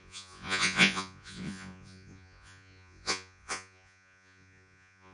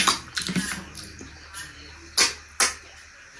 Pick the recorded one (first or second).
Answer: second